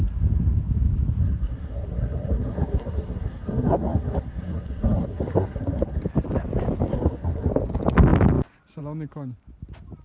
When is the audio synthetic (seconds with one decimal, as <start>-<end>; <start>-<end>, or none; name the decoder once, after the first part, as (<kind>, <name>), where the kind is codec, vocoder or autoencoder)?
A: 1.2-6.0 (codec, SNAC); 6.9-7.5